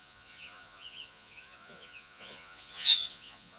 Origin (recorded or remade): remade